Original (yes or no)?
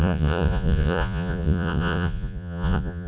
no